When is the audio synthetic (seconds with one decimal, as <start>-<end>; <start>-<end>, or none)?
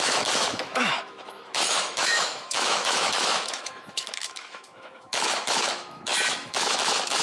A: 0.0-7.2